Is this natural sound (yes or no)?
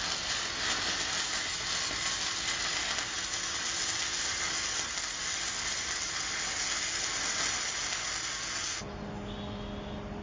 yes